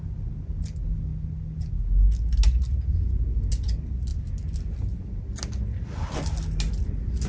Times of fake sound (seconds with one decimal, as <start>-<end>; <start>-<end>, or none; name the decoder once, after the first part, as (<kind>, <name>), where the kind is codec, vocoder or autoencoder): none